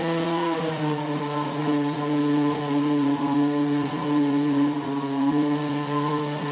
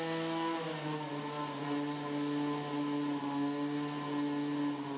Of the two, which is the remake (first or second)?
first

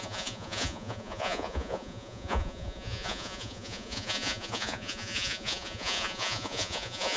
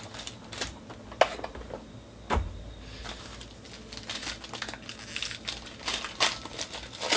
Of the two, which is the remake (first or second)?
first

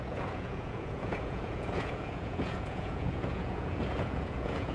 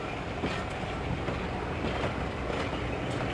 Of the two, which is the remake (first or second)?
first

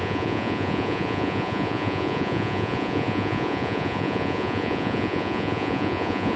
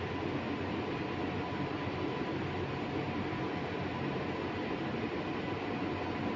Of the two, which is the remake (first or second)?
first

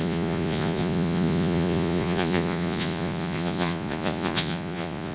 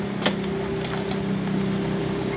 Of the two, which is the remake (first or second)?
first